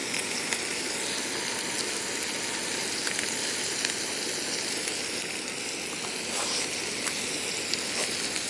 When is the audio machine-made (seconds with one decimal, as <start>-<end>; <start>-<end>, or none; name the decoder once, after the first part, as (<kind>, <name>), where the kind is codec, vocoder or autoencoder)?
0.0-0.6 (vocoder, Vocos)